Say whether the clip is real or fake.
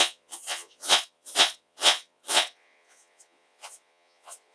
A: fake